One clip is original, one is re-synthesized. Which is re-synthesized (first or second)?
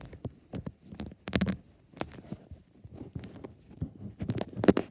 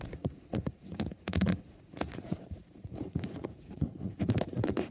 second